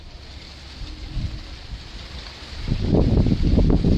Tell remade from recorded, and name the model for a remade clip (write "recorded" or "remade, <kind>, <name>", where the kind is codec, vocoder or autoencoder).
recorded